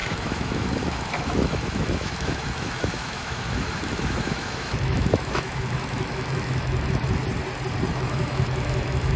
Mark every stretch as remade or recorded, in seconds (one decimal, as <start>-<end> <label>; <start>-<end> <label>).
0.0-7.2 remade; 7.2-7.9 recorded; 7.9-9.2 remade